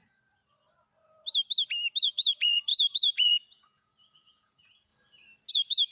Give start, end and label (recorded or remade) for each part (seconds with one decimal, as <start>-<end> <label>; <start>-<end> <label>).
0.0-2.0 recorded; 2.0-4.9 remade; 4.9-5.5 recorded; 5.5-5.9 remade